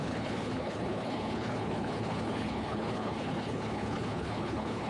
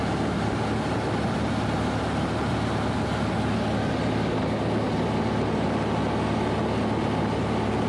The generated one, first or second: first